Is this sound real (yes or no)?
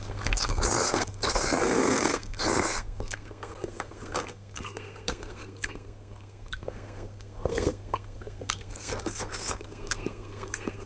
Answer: no